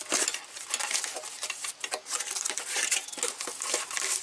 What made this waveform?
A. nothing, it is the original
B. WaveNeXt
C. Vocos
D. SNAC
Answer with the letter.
A